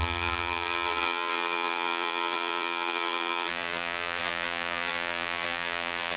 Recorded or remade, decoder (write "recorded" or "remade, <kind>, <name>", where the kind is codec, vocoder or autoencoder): remade, vocoder, BigVGAN v2